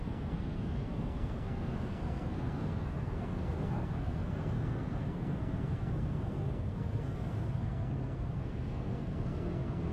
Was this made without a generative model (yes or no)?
no